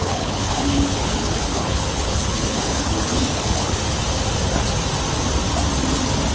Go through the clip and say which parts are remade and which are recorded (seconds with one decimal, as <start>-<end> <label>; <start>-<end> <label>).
0.0-3.8 remade; 3.8-6.3 recorded